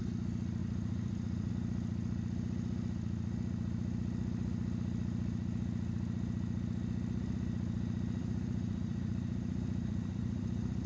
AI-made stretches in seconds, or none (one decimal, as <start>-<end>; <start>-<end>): 0.6-1.5; 8.2-10.9

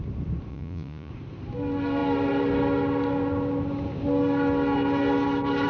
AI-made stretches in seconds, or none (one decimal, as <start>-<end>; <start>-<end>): 0.5-1.1

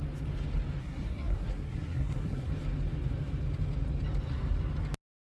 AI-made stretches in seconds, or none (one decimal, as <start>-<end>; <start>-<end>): 0.8-2.5

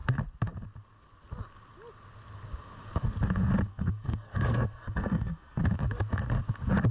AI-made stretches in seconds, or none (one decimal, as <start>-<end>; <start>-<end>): 3.7-5.6

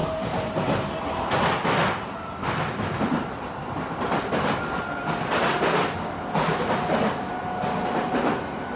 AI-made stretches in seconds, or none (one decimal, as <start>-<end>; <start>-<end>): 0.0-1.0

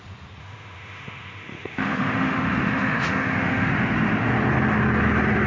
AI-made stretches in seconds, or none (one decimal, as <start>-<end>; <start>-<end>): 0.4-3.7

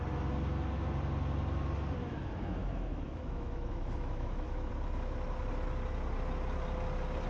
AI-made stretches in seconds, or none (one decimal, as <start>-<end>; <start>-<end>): 2.0-4.7